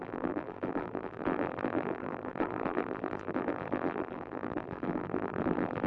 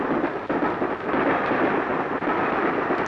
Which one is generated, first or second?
first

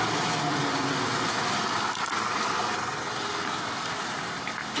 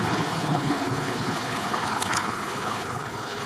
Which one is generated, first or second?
second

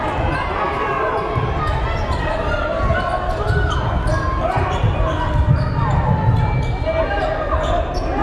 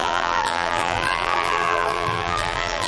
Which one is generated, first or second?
second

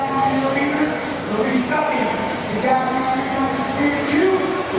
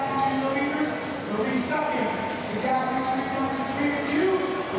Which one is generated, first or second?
first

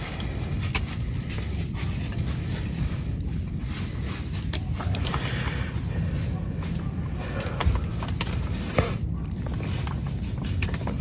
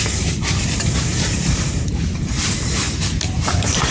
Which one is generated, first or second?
second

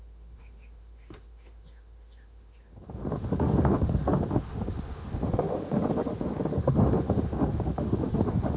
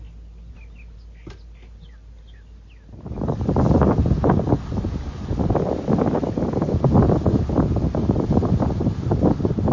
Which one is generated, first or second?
first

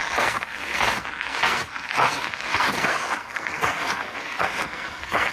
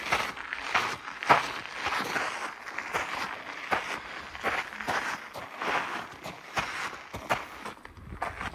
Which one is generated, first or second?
first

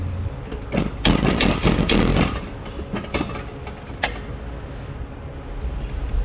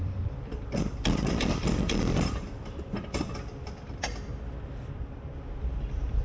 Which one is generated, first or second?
second